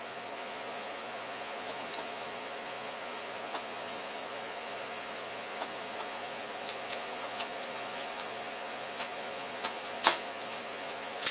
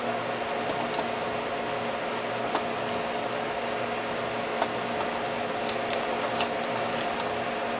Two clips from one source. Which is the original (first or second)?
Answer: second